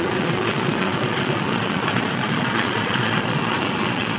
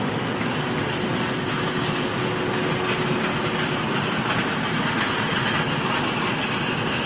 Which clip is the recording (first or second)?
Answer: second